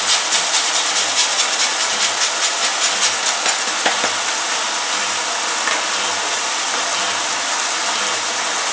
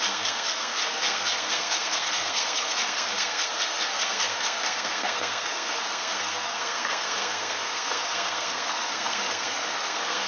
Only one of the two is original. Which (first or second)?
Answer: first